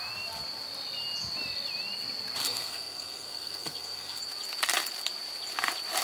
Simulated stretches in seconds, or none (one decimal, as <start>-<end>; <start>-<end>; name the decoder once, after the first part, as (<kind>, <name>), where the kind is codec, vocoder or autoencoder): 2.4-4.2 (codec, SNAC)